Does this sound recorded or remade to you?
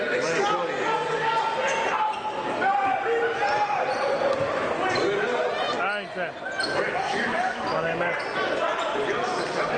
recorded